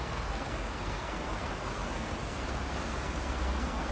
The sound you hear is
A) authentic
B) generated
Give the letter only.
B